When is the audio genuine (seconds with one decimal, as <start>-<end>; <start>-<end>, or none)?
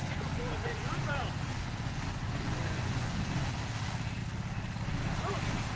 3.5-5.8